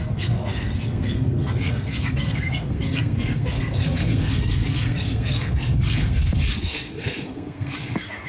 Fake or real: fake